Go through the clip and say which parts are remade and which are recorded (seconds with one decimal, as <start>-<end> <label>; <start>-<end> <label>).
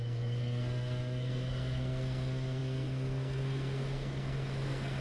0.0-5.0 remade